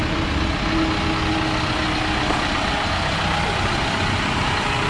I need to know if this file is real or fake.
real